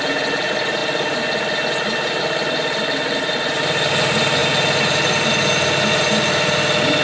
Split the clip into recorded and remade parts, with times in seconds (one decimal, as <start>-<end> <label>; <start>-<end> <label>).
0.0-7.0 recorded